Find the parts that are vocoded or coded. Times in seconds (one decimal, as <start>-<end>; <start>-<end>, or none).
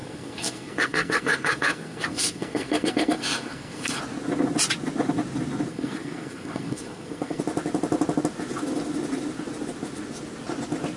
0.0-4.0; 5.7-7.4